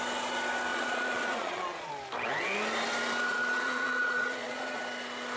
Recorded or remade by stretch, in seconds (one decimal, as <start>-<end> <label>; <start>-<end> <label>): 0.0-0.7 recorded; 0.7-1.9 remade; 1.9-3.3 recorded; 3.3-4.8 remade; 4.8-5.4 recorded